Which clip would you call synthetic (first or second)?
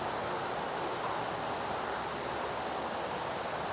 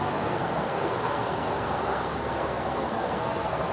second